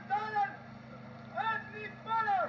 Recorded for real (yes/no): yes